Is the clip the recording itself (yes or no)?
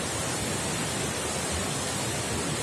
yes